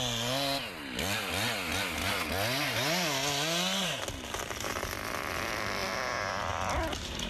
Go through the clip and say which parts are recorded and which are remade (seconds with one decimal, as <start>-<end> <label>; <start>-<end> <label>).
0.0-7.3 recorded